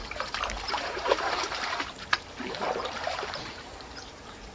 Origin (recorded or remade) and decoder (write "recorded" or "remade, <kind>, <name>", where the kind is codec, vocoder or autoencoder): remade, vocoder, BigVGAN v2